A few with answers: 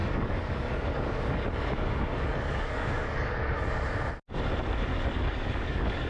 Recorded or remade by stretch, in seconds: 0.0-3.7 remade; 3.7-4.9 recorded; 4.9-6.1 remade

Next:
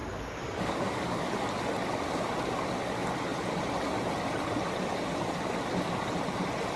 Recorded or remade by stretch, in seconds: 0.0-1.3 remade; 1.3-6.8 recorded

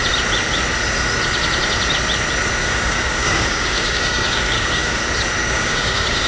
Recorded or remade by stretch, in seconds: 0.0-2.6 recorded; 2.6-5.0 remade; 5.0-5.4 recorded; 5.4-6.3 remade

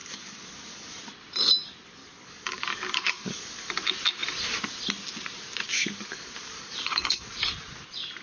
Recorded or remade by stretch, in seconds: 0.0-1.0 remade; 1.0-2.0 recorded; 2.0-3.7 remade; 3.7-5.7 recorded; 5.7-7.3 remade; 7.3-8.2 recorded

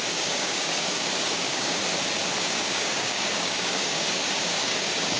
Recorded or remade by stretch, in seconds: 0.0-1.8 remade; 1.8-2.4 recorded; 2.4-5.2 remade

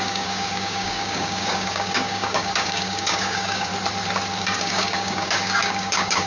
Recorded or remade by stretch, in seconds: 0.0-3.7 remade; 3.7-4.4 recorded; 4.4-6.3 remade

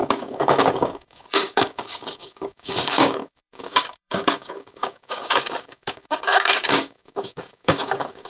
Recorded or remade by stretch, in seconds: 0.0-8.3 remade

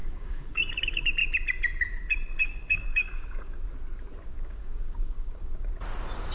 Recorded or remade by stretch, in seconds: 0.0-0.6 remade; 0.6-2.4 recorded; 2.4-3.6 remade; 3.6-4.3 recorded; 4.3-5.7 remade; 5.7-6.3 recorded